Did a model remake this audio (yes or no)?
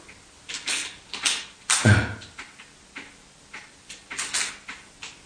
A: no